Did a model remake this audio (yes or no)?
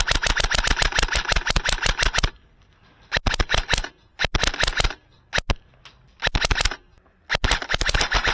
no